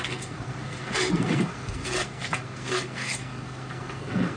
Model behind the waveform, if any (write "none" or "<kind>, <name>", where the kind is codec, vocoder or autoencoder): codec, SNAC